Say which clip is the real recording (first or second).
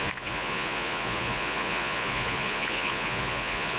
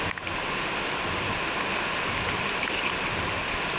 second